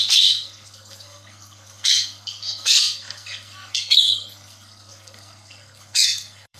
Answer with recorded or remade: remade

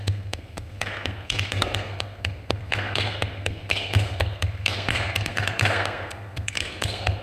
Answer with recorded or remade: remade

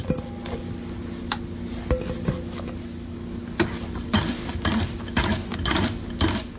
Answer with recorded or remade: recorded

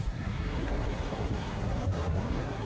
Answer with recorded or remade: remade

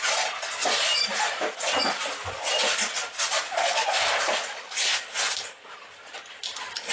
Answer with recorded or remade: recorded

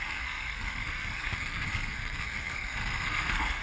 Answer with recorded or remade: remade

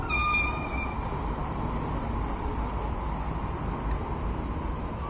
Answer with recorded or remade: recorded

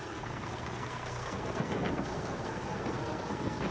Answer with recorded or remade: remade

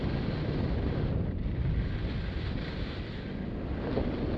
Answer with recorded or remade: recorded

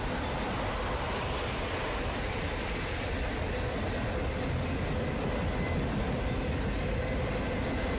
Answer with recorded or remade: recorded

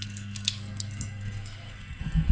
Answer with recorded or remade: remade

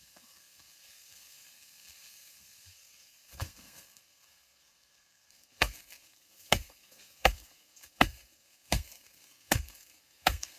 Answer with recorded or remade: remade